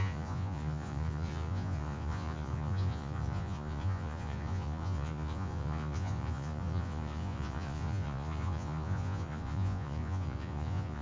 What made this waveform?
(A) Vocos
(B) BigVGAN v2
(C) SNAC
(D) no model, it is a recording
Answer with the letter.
A